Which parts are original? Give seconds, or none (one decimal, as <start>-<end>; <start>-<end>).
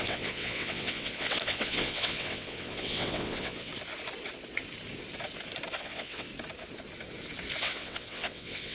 3.7-5.7; 6.3-7.6